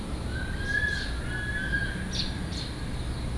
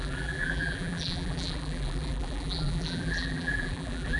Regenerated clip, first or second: second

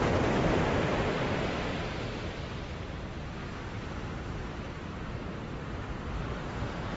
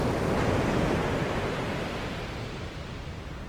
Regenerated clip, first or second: first